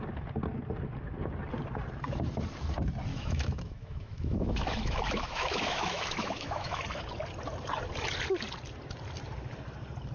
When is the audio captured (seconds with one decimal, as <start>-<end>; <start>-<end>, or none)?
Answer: 0.0-3.1; 6.8-10.1

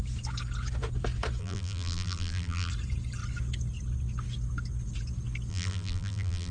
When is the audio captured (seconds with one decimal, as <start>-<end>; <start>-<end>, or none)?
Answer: 0.0-1.4; 2.7-5.5

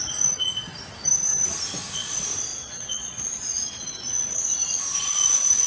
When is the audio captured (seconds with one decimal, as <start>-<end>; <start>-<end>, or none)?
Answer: 0.7-1.9

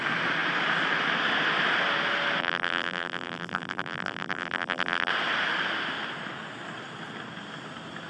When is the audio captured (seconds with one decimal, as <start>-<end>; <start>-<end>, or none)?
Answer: 0.0-2.4; 5.1-8.1

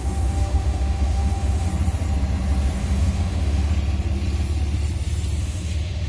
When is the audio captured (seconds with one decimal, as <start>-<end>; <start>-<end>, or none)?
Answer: 1.7-2.8; 3.7-5.4

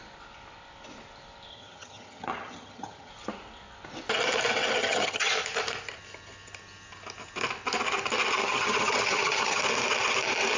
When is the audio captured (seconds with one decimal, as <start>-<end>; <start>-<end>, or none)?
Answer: 0.0-1.5; 3.1-4.8; 5.3-8.4; 9.6-10.6